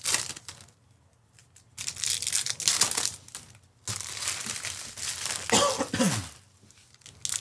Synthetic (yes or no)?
no